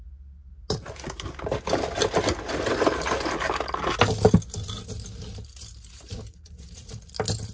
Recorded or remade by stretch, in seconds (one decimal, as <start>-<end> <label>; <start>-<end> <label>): 0.0-6.3 recorded; 6.3-7.1 remade; 7.1-7.5 recorded